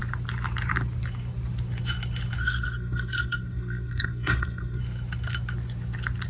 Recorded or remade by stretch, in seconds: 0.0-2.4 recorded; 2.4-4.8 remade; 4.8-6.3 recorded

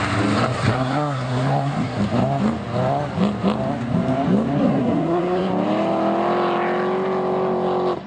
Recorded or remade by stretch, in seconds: 0.0-0.5 recorded; 0.5-2.0 remade; 2.0-4.6 recorded; 4.6-5.5 remade; 5.5-8.1 recorded